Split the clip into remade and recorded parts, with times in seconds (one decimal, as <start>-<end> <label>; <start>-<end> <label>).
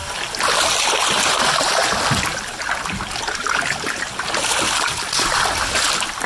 0.0-6.3 recorded